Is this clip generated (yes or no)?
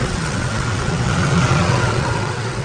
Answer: yes